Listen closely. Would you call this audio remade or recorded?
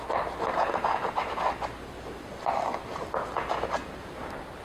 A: recorded